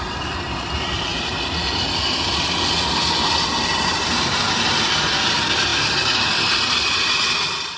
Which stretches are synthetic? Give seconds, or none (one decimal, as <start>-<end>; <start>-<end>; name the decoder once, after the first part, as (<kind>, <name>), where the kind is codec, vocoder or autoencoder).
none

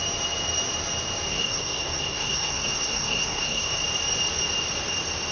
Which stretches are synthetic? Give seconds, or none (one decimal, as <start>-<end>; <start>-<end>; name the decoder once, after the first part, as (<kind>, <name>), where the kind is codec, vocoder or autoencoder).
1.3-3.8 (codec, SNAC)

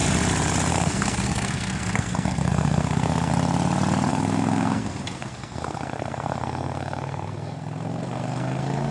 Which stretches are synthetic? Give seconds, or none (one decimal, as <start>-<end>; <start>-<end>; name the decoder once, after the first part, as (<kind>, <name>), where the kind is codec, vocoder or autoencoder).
0.7-3.3 (codec, SNAC); 4.1-8.9

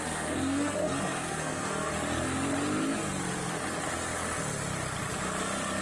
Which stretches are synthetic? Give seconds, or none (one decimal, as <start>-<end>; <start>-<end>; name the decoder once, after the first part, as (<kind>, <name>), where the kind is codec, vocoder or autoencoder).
0.0-1.9 (codec, SNAC)

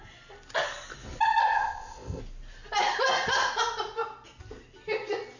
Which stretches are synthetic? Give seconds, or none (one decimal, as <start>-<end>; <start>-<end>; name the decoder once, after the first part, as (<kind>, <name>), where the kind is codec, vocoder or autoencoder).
1.4-2.2 (codec, ZipCodec)